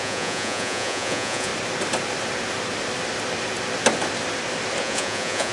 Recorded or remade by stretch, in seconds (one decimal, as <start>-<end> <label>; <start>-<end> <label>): 0.0-1.5 remade; 1.5-4.8 recorded; 4.8-5.5 remade